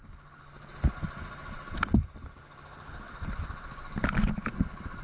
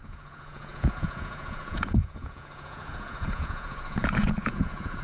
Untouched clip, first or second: first